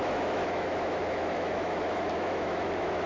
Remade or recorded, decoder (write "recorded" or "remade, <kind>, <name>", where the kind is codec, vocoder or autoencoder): remade, autoencoder, DAC-VAE